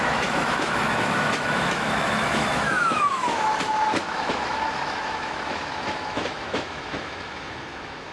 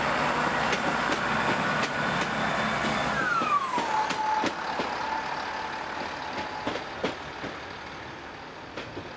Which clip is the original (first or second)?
second